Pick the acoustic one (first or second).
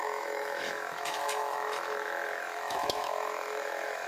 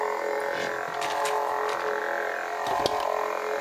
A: second